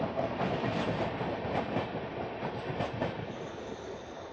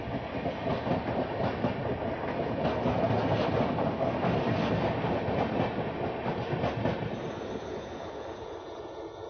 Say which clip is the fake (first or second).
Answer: first